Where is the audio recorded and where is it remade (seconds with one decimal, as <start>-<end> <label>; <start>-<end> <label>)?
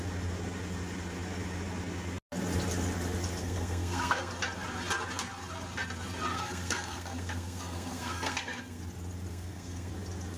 0.0-3.4 recorded; 3.4-4.3 remade; 4.3-6.3 recorded; 6.3-8.8 remade; 8.8-9.3 recorded; 9.3-9.9 remade; 9.9-10.4 recorded